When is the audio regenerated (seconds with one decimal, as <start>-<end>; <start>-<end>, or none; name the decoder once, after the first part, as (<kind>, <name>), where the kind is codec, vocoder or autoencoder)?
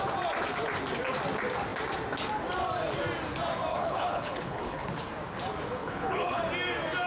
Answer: 3.7-4.9 (codec, HILCodec); 5.8-6.4